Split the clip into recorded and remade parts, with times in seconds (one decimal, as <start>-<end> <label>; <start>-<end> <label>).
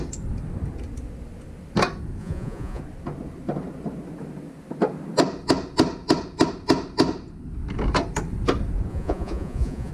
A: 0.0-2.2 recorded; 2.2-2.8 remade; 2.8-8.9 recorded; 8.9-9.9 remade